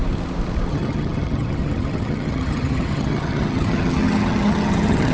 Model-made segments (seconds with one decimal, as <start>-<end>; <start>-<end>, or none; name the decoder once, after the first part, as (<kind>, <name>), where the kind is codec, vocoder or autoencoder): 0.7-5.1 (vocoder, HiFi-GAN)